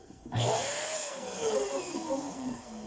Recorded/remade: remade